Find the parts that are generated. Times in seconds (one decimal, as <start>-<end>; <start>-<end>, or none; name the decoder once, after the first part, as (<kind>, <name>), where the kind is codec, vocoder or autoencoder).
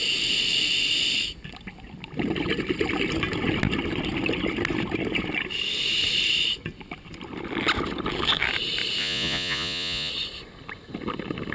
9.0-10.1 (vocoder, Vocos)